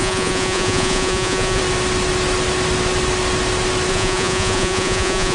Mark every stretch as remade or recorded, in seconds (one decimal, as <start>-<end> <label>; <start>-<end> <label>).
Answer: 0.0-1.6 remade; 1.6-3.9 recorded; 3.9-5.3 remade